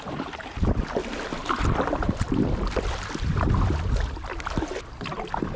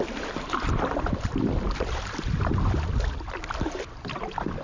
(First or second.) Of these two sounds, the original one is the first